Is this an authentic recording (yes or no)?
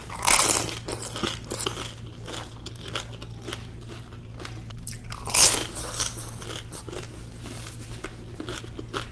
yes